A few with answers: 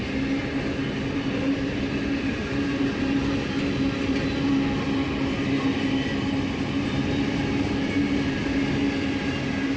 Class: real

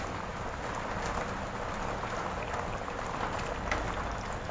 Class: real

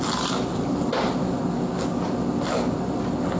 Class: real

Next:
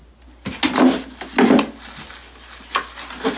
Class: real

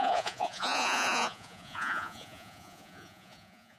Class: fake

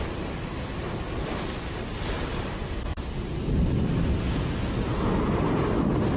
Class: real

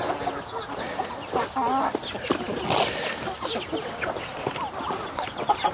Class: real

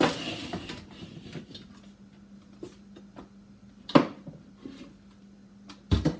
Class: real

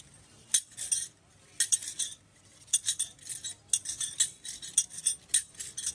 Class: real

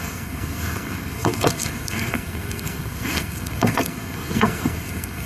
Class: fake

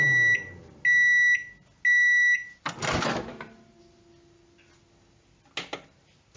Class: real